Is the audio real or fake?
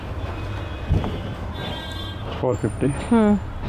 real